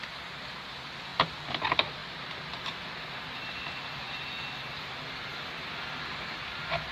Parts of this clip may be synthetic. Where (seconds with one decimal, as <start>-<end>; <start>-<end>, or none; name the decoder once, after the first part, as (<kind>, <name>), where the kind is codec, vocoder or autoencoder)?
none